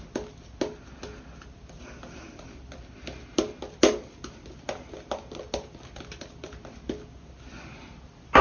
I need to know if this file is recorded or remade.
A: recorded